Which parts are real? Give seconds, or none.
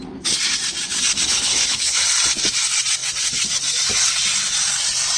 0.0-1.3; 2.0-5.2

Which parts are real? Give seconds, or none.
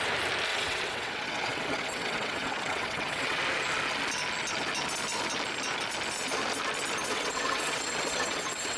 0.0-0.5; 3.4-7.0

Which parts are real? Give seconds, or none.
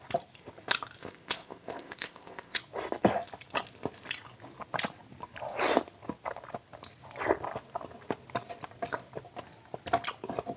0.0-1.0; 2.6-10.6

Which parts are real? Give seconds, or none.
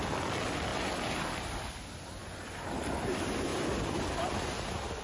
0.0-0.7; 1.8-5.0